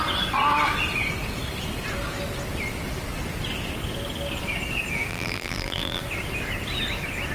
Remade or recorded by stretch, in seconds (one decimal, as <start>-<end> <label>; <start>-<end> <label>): 0.0-5.1 recorded; 5.1-6.0 remade; 6.0-7.3 recorded